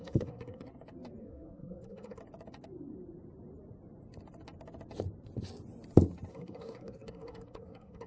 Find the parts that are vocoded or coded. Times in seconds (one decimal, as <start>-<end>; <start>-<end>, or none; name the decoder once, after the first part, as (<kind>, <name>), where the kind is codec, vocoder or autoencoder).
0.0-0.7 (codec, SNAC); 1.2-2.2; 6.3-8.1